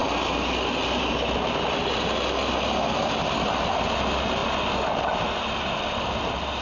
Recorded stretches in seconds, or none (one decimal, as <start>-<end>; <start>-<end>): 0.0-6.6